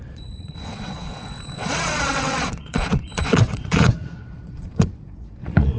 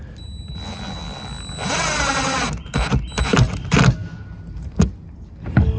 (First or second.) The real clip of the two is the second